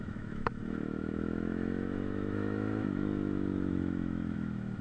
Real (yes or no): no